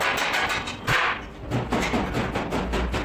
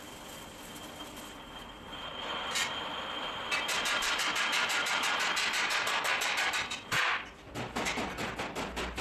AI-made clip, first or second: second